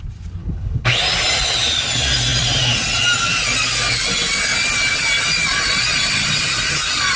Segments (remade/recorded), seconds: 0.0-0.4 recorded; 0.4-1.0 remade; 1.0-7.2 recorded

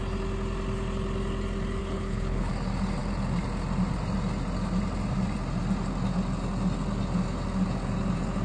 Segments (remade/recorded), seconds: 0.0-1.8 recorded; 1.8-2.5 remade; 2.5-8.4 recorded

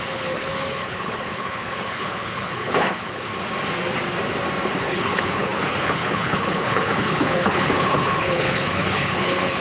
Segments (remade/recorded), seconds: 0.0-3.3 remade; 3.3-4.8 recorded; 4.8-9.6 remade

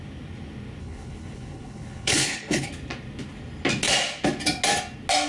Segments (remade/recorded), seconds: 0.0-0.8 recorded; 0.8-2.7 remade; 2.7-5.3 recorded

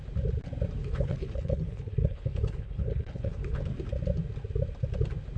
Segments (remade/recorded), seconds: 0.0-0.8 recorded; 0.8-3.6 remade; 3.6-5.4 recorded